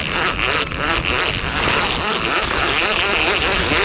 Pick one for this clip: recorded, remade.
recorded